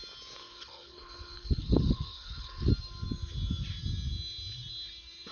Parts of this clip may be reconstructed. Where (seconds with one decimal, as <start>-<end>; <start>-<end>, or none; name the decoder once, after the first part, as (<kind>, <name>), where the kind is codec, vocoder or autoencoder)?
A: 0.4-2.7 (codec, HILCodec)